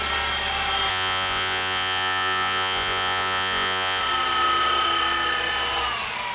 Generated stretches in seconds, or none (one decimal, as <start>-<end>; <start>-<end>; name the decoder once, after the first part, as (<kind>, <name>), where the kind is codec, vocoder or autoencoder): 0.9-4.0 (vocoder, Vocos)